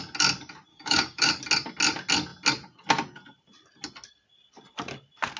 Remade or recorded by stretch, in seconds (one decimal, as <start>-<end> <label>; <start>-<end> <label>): 0.0-0.7 recorded; 0.7-1.3 remade; 1.3-5.4 recorded